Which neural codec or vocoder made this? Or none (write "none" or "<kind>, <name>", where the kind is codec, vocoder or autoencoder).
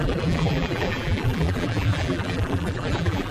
vocoder, BigVGAN v2